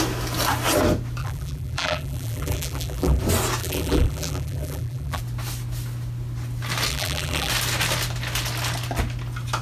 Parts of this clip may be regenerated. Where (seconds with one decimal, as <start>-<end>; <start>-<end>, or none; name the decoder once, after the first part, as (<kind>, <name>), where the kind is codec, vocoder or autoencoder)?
1.2-3.2 (vocoder, BigVGAN v2); 3.6-5.2; 6.9-7.5